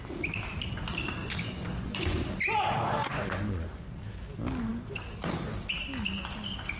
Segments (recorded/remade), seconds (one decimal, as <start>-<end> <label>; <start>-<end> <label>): 0.0-1.2 recorded; 1.2-2.3 remade; 2.3-3.0 recorded; 3.0-3.9 remade; 3.9-6.8 recorded